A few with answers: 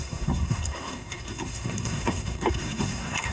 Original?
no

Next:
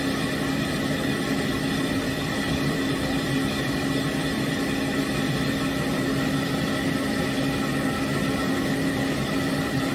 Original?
yes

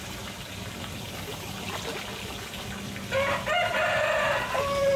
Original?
yes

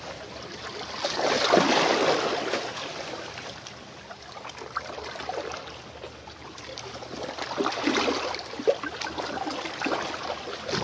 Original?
yes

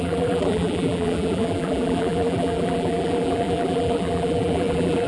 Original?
no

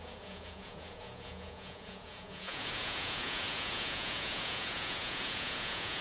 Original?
no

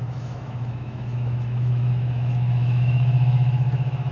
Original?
no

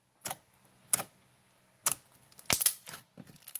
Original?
yes